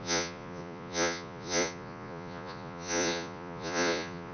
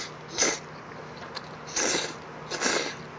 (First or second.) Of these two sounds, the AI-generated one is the first